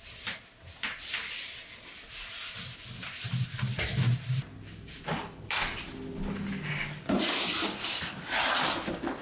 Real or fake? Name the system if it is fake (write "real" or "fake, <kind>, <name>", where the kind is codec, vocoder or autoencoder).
real